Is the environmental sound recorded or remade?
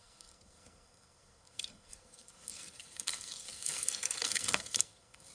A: remade